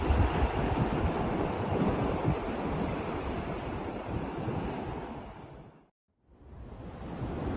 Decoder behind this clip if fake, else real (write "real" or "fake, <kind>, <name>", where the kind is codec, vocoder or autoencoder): real